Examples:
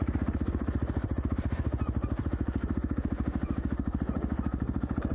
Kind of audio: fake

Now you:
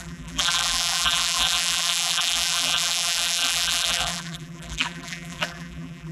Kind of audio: fake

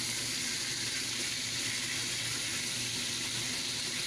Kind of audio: real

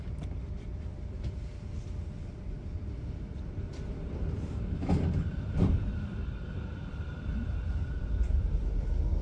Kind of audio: fake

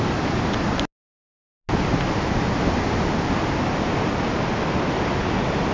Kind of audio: real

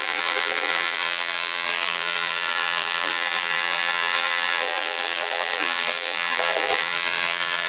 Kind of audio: fake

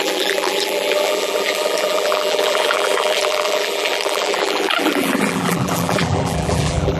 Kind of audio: fake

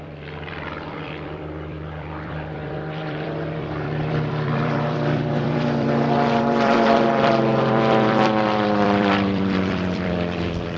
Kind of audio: fake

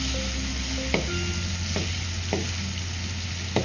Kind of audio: real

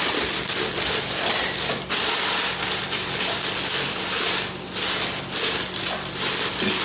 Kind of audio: real